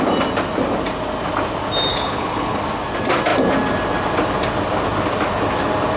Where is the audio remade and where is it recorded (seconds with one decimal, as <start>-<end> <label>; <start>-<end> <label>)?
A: 0.0-1.9 recorded; 1.9-2.6 remade; 2.6-6.0 recorded